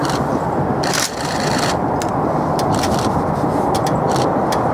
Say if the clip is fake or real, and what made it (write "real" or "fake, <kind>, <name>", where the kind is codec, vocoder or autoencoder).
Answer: real